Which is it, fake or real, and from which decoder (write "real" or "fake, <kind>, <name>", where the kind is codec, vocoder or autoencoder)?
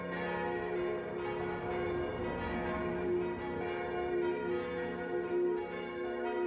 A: real